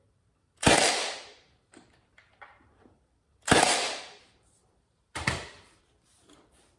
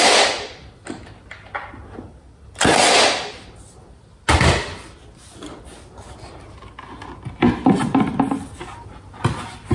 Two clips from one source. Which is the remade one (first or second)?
first